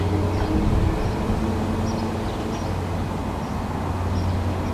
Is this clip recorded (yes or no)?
yes